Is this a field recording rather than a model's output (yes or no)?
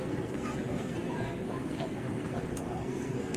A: no